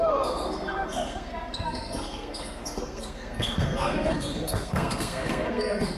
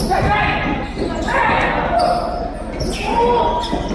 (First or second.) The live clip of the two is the second